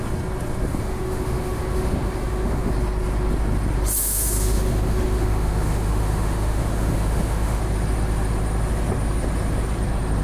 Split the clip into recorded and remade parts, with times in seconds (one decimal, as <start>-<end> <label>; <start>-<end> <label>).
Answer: 0.0-0.7 recorded; 0.7-2.7 remade; 2.7-4.0 recorded; 4.0-7.6 remade; 7.6-10.2 recorded